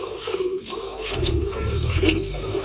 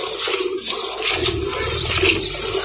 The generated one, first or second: first